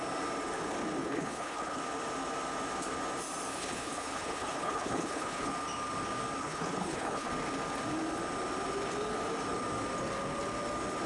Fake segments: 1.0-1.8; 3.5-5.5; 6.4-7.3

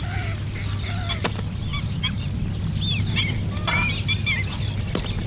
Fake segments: 1.7-2.4

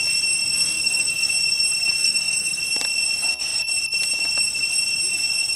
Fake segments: 0.5-1.3; 2.0-2.6

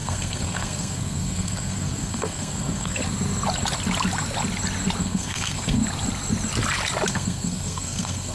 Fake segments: 0.0-3.0; 5.0-5.8; 7.1-8.3